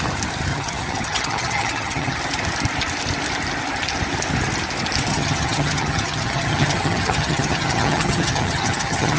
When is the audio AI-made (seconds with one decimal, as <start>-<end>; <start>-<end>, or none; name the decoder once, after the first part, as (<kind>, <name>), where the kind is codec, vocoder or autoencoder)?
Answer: 0.5-2.2 (vocoder, HiFi-GAN); 5.1-9.2